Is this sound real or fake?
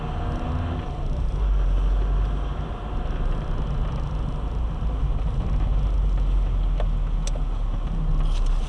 real